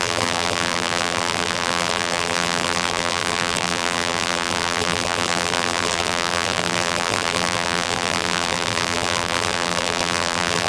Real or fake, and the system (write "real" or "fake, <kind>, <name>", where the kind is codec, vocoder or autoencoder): fake, vocoder, BigVGAN v2